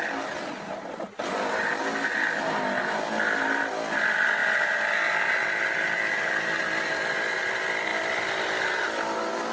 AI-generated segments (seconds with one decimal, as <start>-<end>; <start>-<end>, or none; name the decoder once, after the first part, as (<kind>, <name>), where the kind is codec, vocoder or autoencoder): none